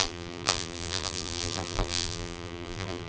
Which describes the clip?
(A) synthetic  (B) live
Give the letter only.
A